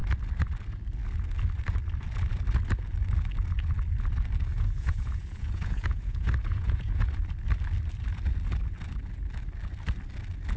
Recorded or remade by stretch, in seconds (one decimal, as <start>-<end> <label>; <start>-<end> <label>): 0.0-4.5 recorded; 4.5-7.1 remade; 7.1-10.6 recorded